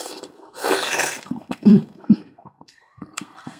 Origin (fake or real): fake